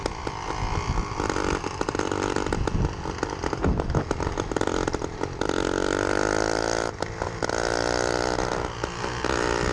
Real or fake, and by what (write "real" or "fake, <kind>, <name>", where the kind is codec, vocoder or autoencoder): real